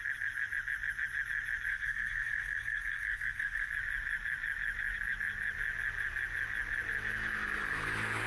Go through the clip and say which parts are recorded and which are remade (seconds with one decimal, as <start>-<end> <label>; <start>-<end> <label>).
0.0-1.7 recorded; 1.7-3.7 remade; 3.7-8.3 recorded